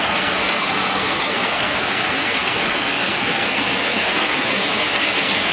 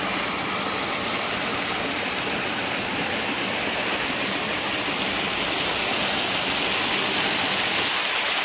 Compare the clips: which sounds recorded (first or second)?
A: second